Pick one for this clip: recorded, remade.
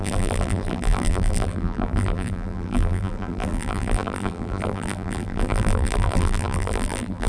remade